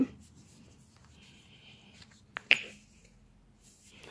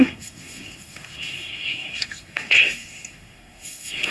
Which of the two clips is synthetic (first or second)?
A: second